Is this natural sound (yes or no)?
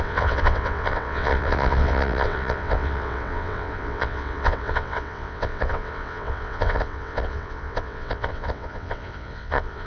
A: no